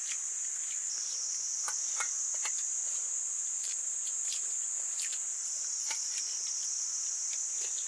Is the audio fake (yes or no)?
no